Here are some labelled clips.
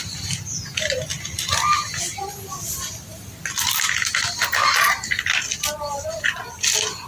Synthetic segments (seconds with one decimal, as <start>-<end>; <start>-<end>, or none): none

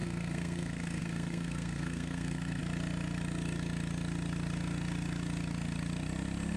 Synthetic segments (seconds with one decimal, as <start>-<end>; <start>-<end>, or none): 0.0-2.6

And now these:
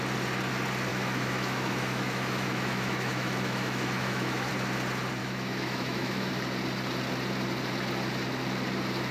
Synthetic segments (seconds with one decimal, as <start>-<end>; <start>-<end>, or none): 0.9-4.5; 5.2-6.3

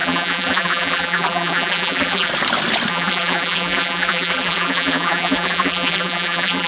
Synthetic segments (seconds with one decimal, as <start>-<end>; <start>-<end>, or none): 0.0-2.3; 2.9-6.7

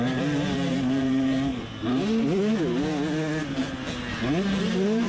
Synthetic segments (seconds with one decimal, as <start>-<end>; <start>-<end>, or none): 0.0-1.5; 4.6-5.1

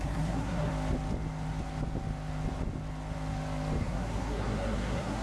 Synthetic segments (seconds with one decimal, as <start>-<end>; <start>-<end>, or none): 0.0-0.7; 3.8-5.2

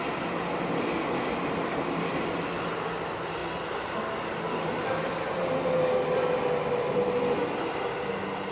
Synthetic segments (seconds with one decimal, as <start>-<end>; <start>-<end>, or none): none